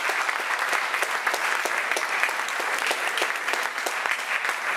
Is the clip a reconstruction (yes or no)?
no